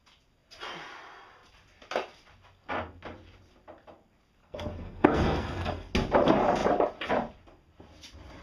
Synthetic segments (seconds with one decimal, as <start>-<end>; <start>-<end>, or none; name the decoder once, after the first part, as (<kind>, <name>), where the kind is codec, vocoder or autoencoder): 4.4-5.9 (codec, SNAC)